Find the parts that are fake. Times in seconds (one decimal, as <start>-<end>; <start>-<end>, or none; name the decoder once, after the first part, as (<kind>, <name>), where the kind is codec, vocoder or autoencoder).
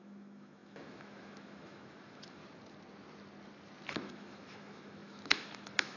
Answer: 0.0-2.4 (autoencoder, DAC-VAE); 3.9-6.0